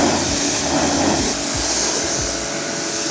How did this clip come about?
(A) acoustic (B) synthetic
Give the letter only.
A